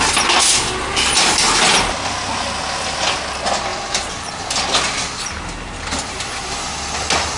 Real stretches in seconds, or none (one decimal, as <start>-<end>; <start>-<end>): 0.0-7.4